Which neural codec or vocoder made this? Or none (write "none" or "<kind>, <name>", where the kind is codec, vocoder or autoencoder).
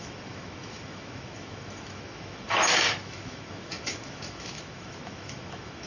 autoencoder, DAC-VAE